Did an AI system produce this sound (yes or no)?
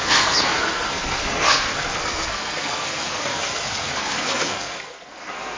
yes